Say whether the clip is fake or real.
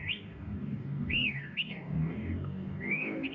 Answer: fake